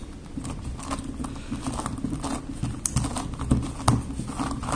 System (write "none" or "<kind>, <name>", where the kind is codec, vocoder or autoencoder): none